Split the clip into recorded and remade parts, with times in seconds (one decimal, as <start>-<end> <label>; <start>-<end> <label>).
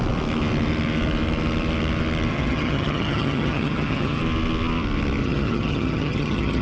0.0-2.3 recorded; 2.3-4.2 remade; 4.2-5.2 recorded; 5.2-6.6 remade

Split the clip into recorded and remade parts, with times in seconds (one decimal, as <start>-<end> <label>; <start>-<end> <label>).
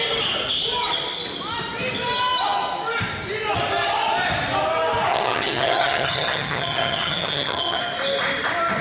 0.0-5.1 recorded; 5.1-7.8 remade; 7.8-8.8 recorded